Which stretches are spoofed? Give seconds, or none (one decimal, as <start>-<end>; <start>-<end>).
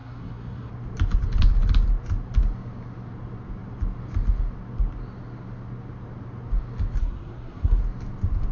0.0-0.7; 7.0-7.8